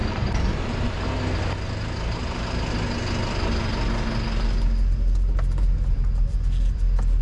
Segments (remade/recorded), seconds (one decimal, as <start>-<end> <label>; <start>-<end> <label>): 0.0-1.0 remade; 1.0-7.2 recorded